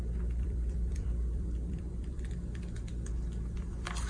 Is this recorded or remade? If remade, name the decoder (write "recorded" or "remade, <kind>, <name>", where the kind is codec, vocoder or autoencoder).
remade, vocoder, BigVGAN v2